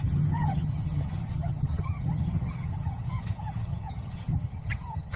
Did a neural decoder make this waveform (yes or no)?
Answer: yes